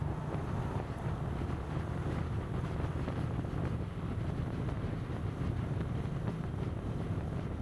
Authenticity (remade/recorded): recorded